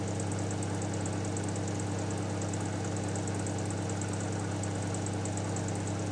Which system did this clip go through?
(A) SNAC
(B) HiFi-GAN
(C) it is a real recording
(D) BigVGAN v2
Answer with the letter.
C